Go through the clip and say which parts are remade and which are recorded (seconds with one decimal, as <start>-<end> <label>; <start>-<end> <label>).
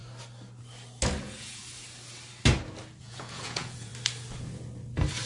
0.0-1.2 recorded; 1.2-1.6 remade; 1.6-3.0 recorded; 3.0-3.9 remade; 3.9-5.3 recorded